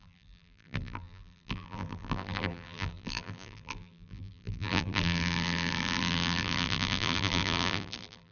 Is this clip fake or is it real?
fake